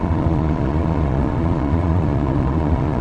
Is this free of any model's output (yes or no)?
no